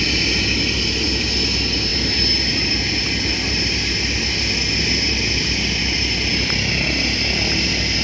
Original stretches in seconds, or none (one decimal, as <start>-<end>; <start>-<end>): 0.0-8.0

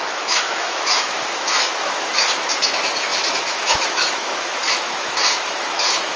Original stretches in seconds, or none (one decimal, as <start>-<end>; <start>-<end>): none

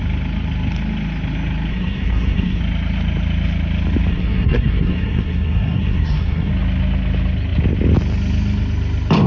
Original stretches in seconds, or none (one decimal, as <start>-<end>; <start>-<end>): 0.0-1.7; 2.6-4.1; 6.5-9.3

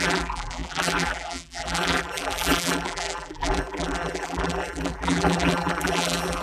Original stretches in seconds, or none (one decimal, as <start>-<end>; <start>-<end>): none